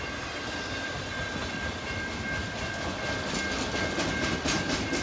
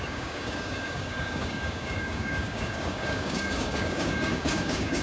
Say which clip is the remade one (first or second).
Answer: second